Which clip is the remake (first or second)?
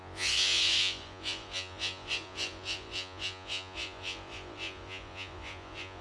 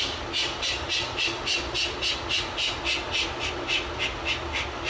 first